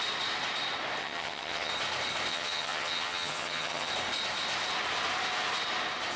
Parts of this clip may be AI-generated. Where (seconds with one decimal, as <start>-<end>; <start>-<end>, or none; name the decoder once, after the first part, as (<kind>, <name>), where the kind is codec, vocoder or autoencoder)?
1.0-1.7 (vocoder, HiFi-GAN); 2.3-3.9